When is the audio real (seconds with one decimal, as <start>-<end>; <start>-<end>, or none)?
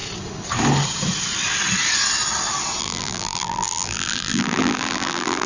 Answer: 0.0-2.8